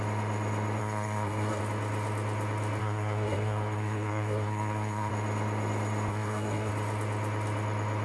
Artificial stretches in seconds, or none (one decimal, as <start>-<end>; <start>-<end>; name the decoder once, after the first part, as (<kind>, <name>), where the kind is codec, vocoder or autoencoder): 0.8-1.6 (codec, SNAC); 2.8-5.1; 6.1-6.7